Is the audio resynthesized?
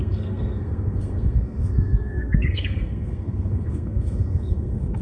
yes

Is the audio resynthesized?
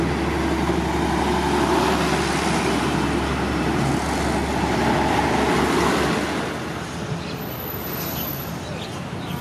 no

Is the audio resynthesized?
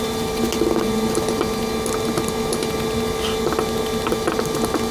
no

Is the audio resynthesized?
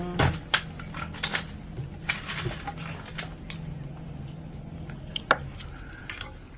no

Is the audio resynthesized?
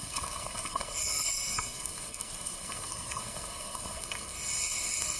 yes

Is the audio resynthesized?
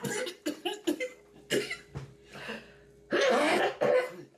no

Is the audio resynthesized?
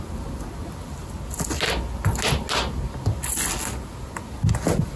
no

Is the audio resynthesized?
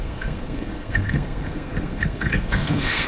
yes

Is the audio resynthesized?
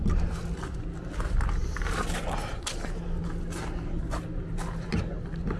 no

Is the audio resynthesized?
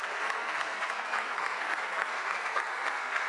yes